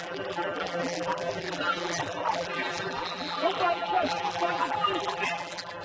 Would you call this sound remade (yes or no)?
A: yes